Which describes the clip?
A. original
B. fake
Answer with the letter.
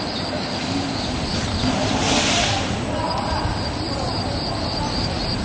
A